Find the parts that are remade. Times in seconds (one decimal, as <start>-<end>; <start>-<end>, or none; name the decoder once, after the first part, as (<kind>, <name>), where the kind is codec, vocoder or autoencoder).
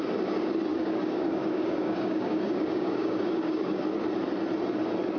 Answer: 0.7-3.8 (codec, DAC)